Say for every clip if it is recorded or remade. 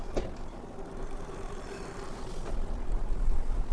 recorded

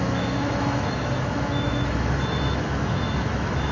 remade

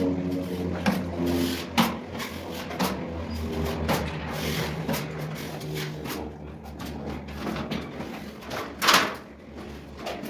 recorded